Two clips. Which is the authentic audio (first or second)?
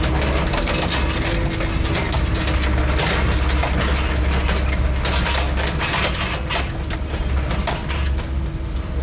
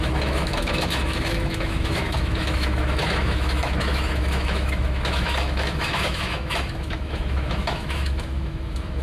first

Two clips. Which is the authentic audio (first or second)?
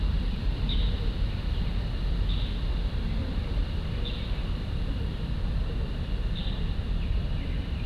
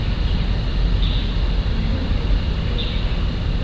second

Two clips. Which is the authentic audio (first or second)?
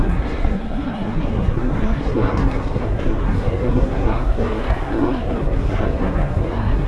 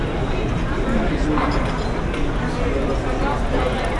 second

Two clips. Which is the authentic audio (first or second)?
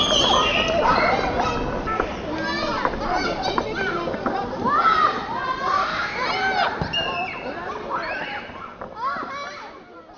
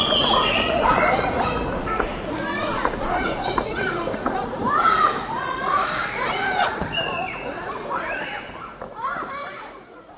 first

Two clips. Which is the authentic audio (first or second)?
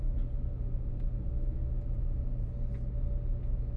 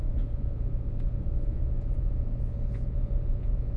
first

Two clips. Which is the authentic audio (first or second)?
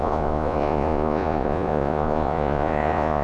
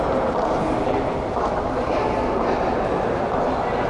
second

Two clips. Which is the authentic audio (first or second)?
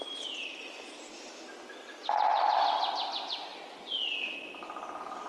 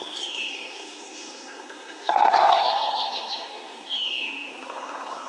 first